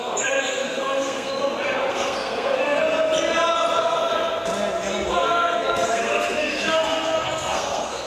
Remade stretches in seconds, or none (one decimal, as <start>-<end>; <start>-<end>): 0.0-1.3; 1.9-2.8; 3.8-4.5; 5.1-8.1